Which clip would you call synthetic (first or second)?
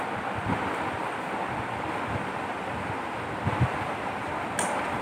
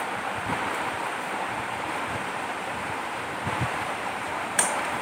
second